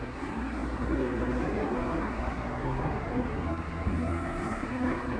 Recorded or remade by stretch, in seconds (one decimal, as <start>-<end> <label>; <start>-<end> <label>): 0.0-5.2 remade